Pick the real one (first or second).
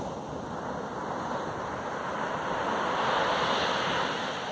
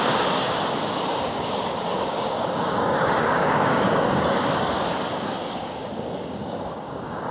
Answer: first